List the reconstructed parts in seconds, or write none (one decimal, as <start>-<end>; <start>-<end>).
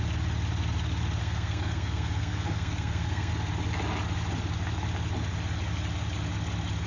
1.2-3.3